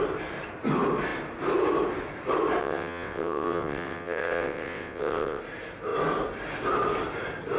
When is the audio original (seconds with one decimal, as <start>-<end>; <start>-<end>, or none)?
0.0-2.6; 5.4-7.6